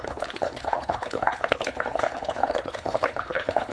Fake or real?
fake